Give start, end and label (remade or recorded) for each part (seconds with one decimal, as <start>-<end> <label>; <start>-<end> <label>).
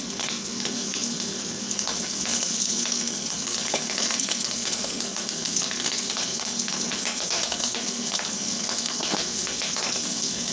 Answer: 0.0-10.5 remade